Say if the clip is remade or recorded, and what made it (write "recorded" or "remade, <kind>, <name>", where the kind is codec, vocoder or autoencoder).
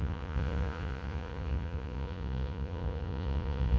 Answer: remade, vocoder, Vocos